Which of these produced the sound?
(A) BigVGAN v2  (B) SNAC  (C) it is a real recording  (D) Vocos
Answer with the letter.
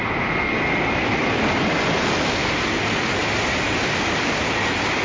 C